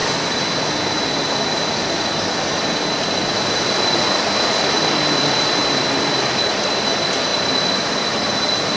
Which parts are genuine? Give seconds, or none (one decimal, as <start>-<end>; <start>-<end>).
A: 0.0-8.8

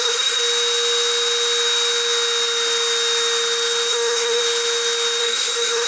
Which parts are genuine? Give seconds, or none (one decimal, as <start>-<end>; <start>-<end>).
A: 0.4-3.9; 4.4-5.2

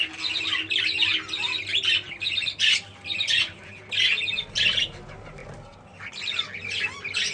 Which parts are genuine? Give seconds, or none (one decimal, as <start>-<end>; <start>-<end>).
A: 0.0-1.7; 3.7-7.3

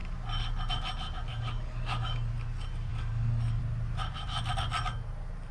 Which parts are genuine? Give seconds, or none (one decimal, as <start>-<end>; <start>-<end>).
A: 0.0-1.3; 2.3-2.9; 3.6-5.5

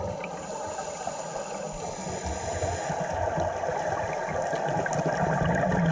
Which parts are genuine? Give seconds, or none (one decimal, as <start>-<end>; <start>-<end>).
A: 0.0-5.9

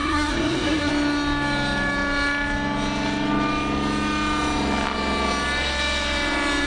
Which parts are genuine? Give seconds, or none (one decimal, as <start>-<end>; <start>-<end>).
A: 0.9-6.7

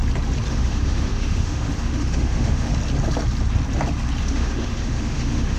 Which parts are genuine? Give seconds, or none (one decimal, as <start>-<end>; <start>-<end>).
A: 0.0-0.5; 2.7-4.2

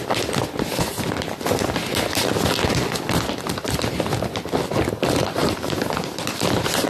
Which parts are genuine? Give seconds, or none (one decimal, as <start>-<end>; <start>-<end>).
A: 0.0-5.4